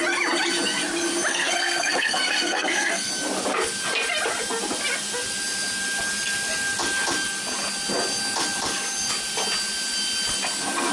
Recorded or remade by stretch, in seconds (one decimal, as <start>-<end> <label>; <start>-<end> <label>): 0.0-1.3 recorded; 1.3-3.1 remade; 3.1-10.9 recorded